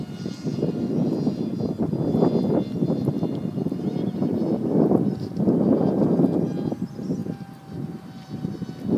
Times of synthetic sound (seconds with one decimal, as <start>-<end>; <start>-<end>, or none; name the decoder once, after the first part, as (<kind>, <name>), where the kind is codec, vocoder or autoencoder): none